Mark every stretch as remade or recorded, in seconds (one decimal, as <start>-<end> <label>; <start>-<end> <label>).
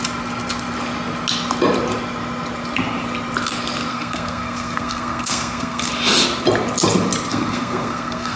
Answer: 0.0-3.9 recorded; 3.9-5.9 remade; 5.9-7.3 recorded; 7.3-8.4 remade